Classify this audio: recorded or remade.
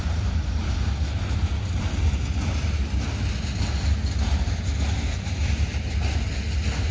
recorded